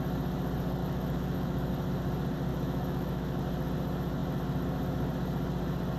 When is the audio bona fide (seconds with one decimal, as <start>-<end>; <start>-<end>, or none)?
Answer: 0.0-0.8; 1.7-2.5; 3.4-6.0